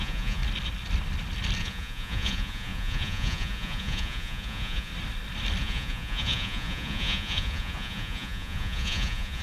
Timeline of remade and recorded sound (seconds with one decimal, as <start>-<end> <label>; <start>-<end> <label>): 0.0-0.4 remade; 0.4-1.6 recorded; 1.6-4.9 remade; 4.9-5.6 recorded; 5.6-9.4 remade